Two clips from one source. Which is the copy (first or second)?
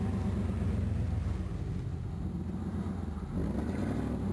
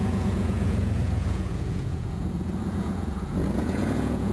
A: second